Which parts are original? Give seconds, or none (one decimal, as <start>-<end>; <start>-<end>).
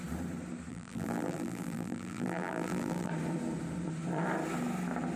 0.0-0.7; 3.1-5.2